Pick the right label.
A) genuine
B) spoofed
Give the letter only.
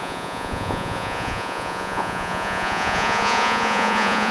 B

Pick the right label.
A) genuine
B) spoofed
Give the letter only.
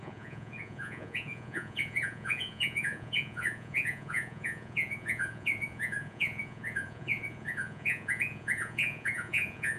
B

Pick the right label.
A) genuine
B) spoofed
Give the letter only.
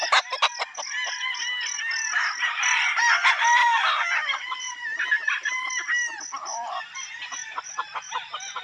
A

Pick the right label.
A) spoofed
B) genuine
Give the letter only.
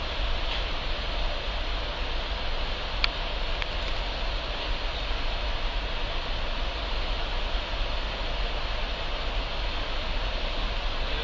B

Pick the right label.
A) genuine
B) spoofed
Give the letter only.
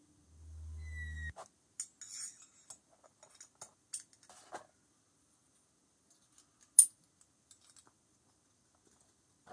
A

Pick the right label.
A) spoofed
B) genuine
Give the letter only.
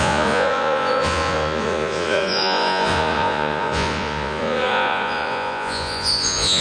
A